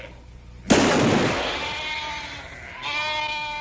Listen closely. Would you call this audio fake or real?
real